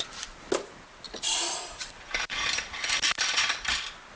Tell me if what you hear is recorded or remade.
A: recorded